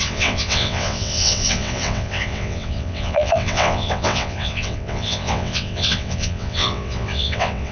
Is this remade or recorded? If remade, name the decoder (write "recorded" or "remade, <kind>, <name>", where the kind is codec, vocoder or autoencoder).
remade, vocoder, WaveNeXt